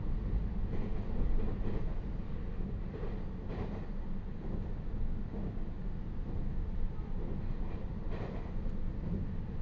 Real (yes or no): yes